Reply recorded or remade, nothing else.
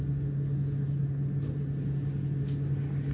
recorded